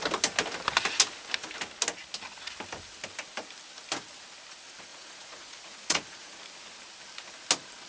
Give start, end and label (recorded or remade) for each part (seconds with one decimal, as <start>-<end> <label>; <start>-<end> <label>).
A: 0.0-4.9 recorded; 4.9-6.3 remade; 6.3-7.9 recorded